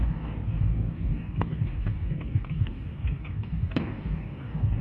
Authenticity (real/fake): fake